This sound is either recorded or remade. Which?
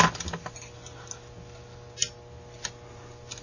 recorded